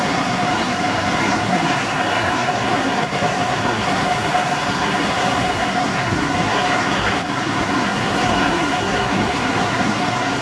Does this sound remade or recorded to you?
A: remade